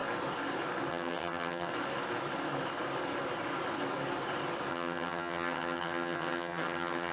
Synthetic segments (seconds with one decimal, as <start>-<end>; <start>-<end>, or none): 0.9-1.7; 4.7-7.1